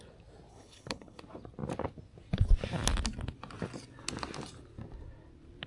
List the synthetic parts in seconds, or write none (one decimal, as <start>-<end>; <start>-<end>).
0.5-1.2